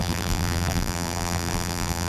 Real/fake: fake